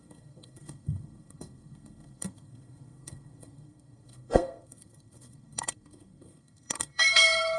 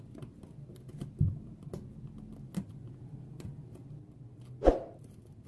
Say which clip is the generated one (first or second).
first